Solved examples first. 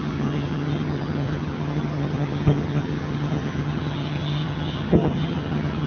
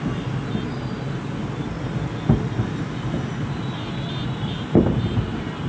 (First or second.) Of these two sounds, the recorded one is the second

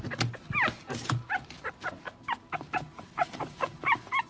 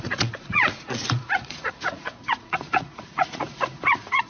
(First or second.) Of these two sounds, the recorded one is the first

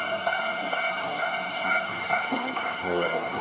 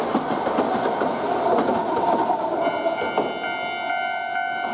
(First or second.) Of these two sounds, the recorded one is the second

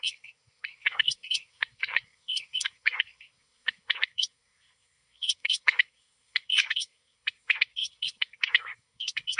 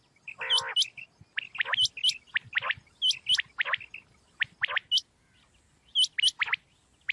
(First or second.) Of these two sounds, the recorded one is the second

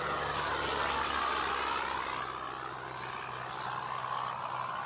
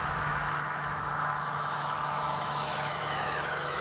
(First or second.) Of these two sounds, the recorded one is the first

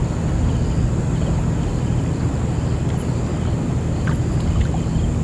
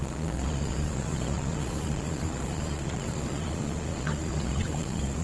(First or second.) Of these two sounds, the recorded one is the first